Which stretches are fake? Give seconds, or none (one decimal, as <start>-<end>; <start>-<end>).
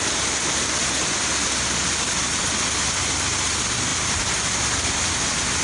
none